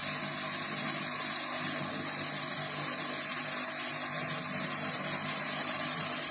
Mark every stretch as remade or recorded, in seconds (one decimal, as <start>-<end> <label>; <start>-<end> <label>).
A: 0.0-6.3 recorded